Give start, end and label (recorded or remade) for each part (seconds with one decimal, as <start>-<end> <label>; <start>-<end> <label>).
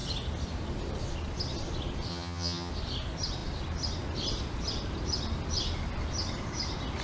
0.0-2.1 recorded; 2.1-2.7 remade; 2.7-7.0 recorded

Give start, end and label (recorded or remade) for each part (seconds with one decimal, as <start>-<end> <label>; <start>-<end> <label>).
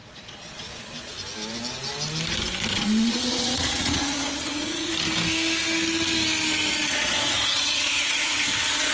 0.0-1.1 remade; 1.1-2.7 recorded; 2.7-4.9 remade; 4.9-6.8 recorded; 6.8-8.9 remade